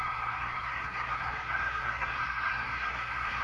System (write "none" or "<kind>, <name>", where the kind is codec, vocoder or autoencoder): codec, SNAC